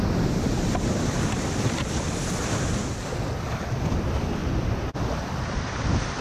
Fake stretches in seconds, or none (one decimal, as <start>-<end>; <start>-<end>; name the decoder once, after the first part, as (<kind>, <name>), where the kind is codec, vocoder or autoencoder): 0.0-2.4 (vocoder, BigVGAN v2); 3.4-4.4; 5.5-6.2

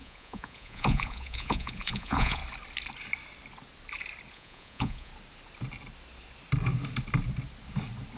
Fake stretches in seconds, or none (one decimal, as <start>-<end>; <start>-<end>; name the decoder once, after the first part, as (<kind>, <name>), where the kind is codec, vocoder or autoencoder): 0.0-2.4 (vocoder, Vocos); 4.3-5.1

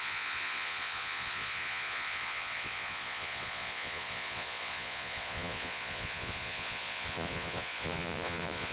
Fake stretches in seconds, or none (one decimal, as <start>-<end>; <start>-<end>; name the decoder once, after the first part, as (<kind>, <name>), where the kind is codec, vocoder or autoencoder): 0.0-8.7 (vocoder, Vocos)